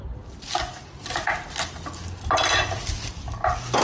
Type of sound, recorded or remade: recorded